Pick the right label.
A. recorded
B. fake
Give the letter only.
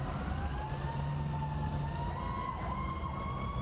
A